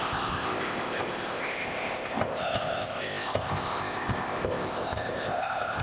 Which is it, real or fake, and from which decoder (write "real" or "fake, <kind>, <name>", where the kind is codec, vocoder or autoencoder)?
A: fake, codec, ZipCodec